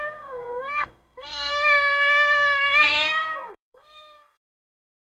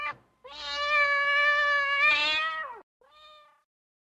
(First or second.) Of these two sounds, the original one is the second